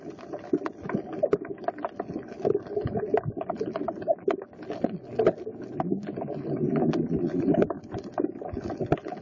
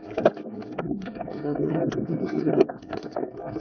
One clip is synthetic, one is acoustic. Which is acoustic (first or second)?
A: first